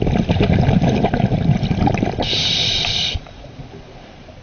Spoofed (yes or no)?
no